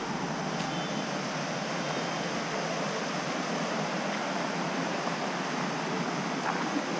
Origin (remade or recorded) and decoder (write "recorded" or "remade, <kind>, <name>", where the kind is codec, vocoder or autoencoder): recorded